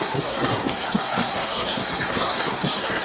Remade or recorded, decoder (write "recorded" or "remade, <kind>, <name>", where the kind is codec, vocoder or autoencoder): remade, codec, SNAC